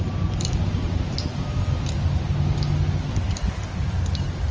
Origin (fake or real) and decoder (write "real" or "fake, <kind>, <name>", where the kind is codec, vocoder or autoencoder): real